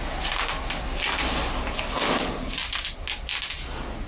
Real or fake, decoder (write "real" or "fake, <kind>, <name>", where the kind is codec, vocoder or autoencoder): real